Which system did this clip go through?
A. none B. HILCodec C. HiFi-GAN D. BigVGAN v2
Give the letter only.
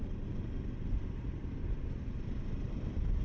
A